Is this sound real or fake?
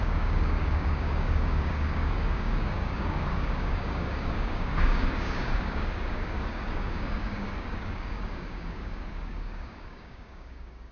fake